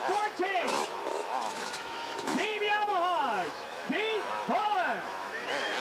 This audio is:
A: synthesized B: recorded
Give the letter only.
A